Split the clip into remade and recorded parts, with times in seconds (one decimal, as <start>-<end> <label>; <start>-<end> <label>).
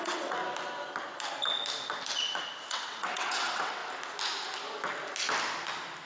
0.0-0.4 remade; 0.4-2.7 recorded; 2.7-3.8 remade; 3.8-6.1 recorded